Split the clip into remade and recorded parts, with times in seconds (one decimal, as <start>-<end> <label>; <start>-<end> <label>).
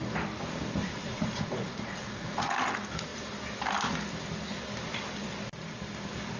0.0-0.8 recorded; 0.8-2.5 remade; 2.5-6.4 recorded